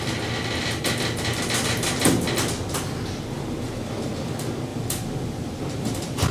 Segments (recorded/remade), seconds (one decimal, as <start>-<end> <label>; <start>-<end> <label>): 0.0-2.6 recorded; 2.6-4.1 remade; 4.1-4.7 recorded; 4.7-6.3 remade